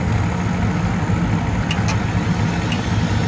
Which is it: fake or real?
real